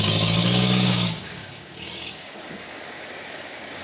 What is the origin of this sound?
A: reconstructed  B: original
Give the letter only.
A